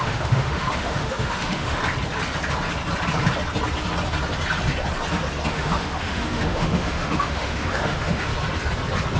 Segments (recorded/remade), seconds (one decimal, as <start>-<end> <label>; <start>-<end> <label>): 0.0-1.8 remade; 1.8-5.5 recorded; 5.5-8.3 remade; 8.3-9.2 recorded